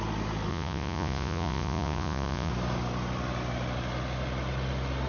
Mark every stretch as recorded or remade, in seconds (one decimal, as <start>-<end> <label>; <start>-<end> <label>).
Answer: 0.0-0.5 recorded; 0.5-2.5 remade; 2.5-5.1 recorded